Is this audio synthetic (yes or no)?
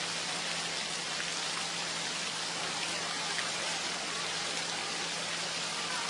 no